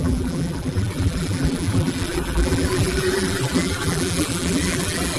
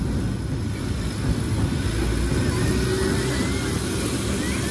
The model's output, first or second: first